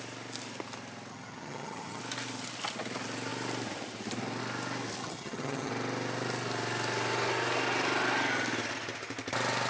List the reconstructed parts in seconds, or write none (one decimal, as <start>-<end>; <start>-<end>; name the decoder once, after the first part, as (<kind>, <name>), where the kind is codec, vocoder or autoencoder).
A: 1.1-2.0 (vocoder, HiFi-GAN); 5.0-5.7